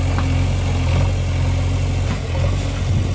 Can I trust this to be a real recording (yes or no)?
yes